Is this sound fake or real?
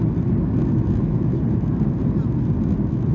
real